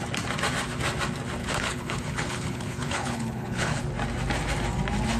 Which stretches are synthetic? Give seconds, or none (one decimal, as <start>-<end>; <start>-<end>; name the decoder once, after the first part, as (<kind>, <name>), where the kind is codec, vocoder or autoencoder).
1.4-3.8 (codec, HILCodec)